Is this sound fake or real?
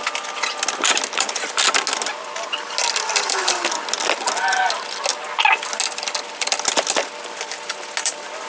real